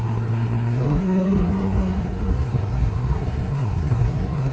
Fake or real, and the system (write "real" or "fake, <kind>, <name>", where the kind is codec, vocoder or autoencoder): fake, codec, SNAC